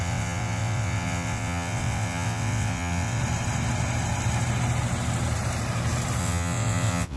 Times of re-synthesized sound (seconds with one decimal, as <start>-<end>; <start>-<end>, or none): 0.0-3.2; 6.2-7.2